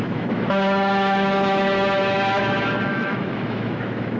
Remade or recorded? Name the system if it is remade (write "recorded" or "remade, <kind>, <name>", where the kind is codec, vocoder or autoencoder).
remade, autoencoder, DAC-VAE